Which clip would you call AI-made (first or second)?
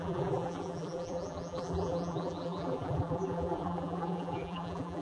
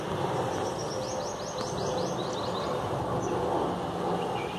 first